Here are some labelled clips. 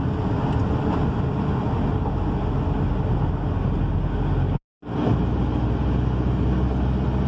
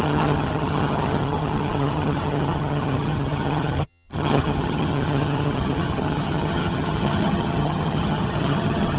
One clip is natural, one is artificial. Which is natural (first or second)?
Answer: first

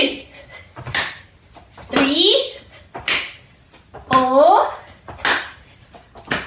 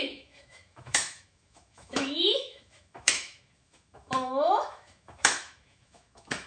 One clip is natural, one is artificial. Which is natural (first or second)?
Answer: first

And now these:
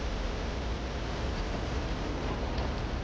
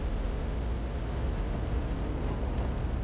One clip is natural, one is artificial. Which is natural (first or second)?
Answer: second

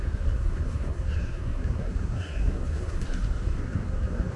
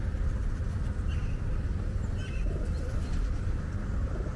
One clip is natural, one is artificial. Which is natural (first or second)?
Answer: second